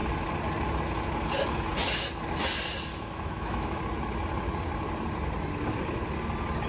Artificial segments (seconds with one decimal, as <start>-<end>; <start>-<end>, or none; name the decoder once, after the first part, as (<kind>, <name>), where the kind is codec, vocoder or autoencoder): 2.9-3.8 (autoencoder, DAC-VAE)